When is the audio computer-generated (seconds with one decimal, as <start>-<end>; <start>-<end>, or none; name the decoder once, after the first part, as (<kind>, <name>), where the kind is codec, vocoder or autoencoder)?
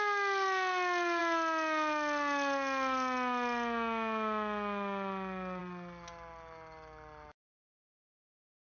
none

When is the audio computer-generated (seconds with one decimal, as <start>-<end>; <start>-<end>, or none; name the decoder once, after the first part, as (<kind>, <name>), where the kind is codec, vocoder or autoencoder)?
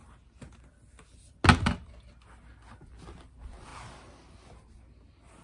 none